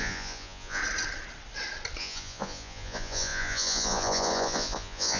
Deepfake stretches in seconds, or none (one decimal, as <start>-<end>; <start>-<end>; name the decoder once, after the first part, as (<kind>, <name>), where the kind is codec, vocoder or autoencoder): 0.0-0.8 (vocoder, Vocos); 2.0-5.2